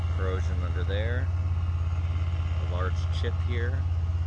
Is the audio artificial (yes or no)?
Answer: no